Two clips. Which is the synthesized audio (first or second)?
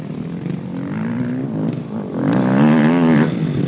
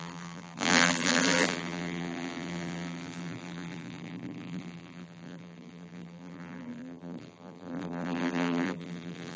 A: second